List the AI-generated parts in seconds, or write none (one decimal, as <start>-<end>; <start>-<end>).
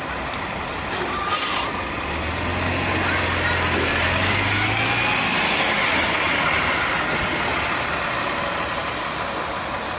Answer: none